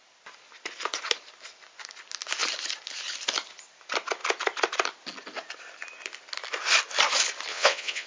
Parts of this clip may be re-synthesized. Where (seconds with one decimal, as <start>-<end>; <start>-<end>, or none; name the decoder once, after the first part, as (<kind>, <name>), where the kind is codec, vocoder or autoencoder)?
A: 7.5-8.1 (vocoder, WaveNeXt)